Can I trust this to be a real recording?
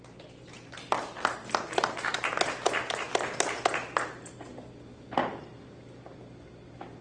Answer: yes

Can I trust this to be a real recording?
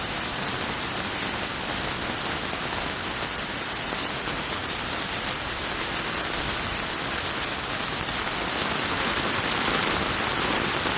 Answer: yes